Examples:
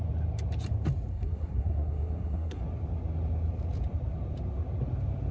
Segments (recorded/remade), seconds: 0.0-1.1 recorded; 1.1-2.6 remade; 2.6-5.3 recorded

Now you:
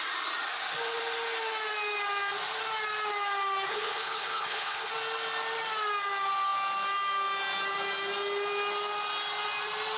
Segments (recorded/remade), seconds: 0.0-3.7 recorded; 3.7-4.9 remade; 4.9-10.0 recorded

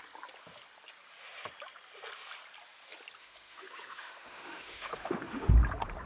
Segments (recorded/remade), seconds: 0.0-3.2 recorded; 3.2-5.5 remade; 5.5-6.1 recorded